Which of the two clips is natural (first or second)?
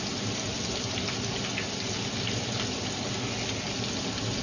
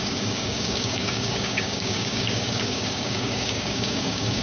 first